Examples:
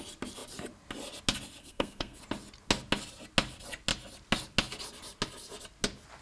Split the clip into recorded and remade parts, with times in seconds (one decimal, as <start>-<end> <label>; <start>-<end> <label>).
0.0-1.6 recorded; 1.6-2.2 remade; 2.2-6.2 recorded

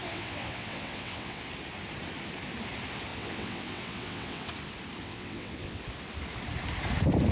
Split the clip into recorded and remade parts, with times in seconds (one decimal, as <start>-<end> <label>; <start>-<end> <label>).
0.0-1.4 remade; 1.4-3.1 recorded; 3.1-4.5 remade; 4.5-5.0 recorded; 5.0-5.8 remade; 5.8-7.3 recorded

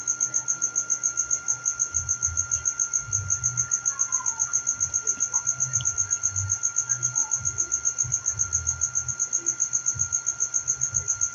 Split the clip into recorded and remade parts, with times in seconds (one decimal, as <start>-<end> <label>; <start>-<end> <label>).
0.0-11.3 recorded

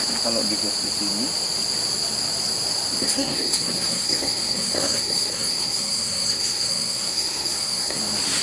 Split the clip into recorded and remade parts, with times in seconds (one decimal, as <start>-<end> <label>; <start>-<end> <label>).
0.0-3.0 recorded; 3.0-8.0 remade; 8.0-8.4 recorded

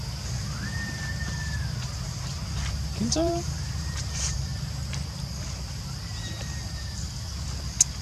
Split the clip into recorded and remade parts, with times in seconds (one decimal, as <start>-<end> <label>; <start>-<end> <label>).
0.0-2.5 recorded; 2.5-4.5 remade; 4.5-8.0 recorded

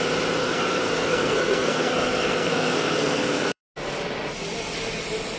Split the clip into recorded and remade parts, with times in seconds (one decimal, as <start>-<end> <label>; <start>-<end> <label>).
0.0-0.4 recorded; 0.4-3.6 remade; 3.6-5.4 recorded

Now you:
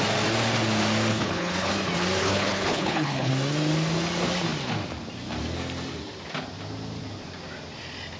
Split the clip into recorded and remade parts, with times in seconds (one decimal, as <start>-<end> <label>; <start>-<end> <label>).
0.0-1.1 recorded; 1.1-1.7 remade; 1.7-2.2 recorded; 2.2-3.3 remade; 3.3-8.2 recorded

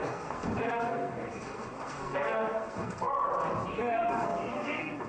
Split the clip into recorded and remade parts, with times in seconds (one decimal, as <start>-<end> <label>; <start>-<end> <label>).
0.0-3.1 remade; 3.1-3.7 recorded; 3.7-5.1 remade